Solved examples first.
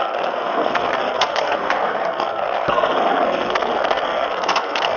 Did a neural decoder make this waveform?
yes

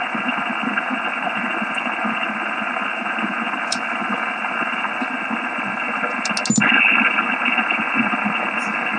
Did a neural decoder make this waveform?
no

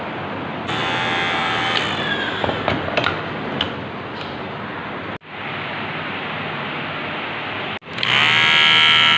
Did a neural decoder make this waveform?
no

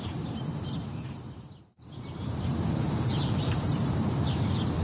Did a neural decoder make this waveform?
yes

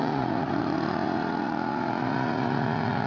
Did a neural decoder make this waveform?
yes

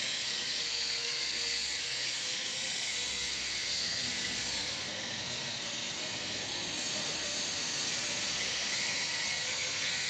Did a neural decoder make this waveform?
yes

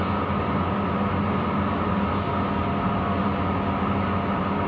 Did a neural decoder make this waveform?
no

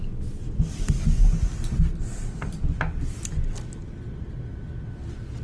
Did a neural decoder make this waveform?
no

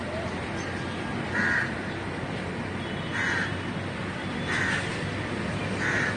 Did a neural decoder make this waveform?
no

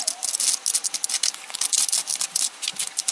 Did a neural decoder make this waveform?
no